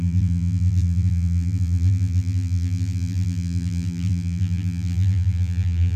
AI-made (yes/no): yes